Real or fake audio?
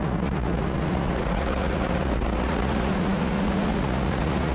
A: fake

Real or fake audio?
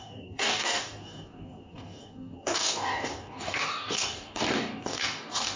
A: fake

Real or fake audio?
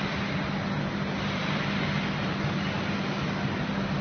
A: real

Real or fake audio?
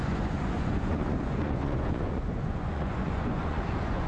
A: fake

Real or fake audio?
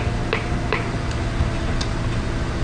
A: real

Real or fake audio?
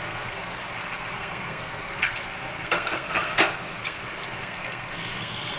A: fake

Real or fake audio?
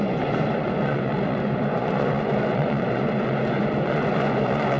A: fake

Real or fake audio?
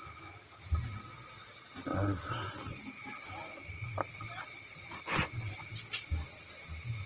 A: real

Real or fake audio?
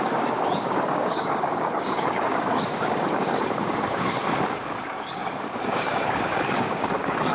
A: fake